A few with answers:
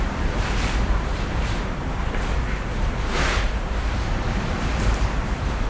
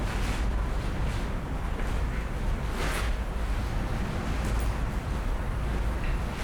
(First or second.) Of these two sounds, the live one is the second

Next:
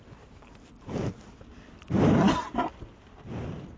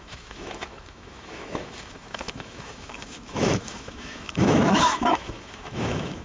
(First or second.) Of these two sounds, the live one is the first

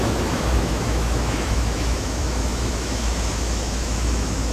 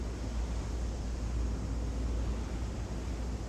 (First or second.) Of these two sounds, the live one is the second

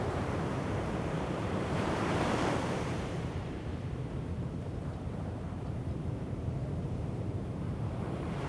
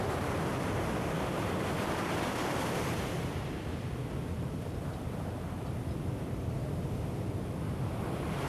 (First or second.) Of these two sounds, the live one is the second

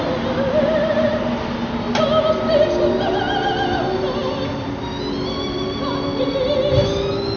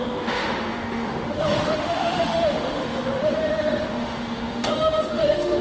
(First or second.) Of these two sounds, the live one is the first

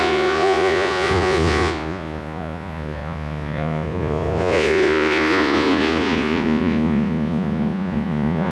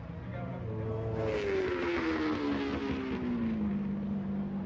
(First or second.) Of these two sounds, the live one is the second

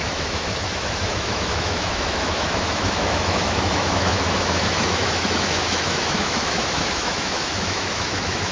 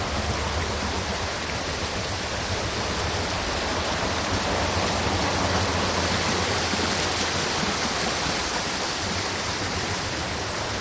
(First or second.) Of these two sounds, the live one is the second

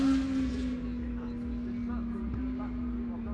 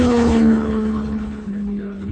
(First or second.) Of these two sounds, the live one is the first